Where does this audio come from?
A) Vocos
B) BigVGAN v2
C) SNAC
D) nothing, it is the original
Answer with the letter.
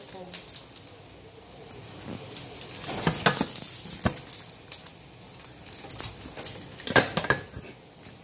D